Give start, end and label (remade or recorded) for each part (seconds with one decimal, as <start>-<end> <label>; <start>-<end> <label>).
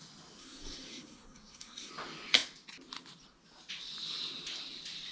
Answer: 0.0-0.4 recorded; 0.4-1.9 remade; 1.9-5.1 recorded